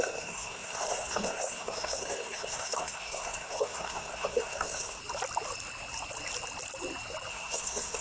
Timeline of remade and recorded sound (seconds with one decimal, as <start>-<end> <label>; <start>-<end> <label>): 0.0-5.0 remade; 5.0-7.3 recorded; 7.3-8.0 remade